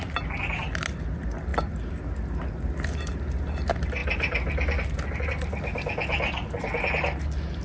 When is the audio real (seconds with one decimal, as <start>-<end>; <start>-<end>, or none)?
0.0-7.6

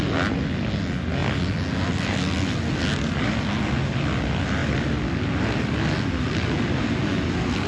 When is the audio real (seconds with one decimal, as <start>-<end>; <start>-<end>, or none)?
0.0-7.7

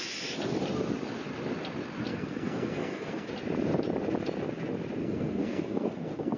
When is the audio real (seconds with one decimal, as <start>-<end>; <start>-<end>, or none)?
0.0-2.1; 3.3-5.0

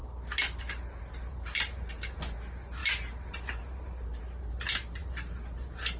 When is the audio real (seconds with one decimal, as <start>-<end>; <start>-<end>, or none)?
0.0-1.0

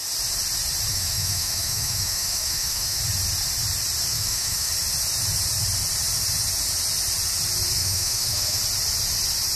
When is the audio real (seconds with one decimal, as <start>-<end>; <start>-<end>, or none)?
0.0-0.9; 3.0-4.1; 4.7-7.8; 8.6-9.6

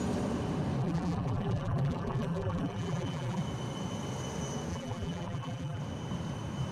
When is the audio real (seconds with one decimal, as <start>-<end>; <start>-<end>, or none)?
0.0-0.8; 3.4-4.7; 5.8-6.7

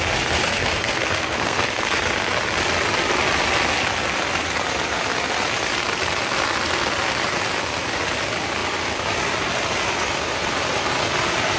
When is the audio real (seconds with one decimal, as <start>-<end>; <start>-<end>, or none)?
0.0-0.4; 2.1-11.6